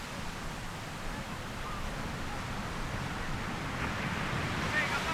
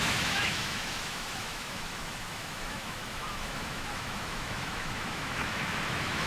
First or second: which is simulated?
second